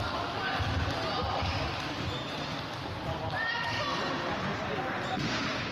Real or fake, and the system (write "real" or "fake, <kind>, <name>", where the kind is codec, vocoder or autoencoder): real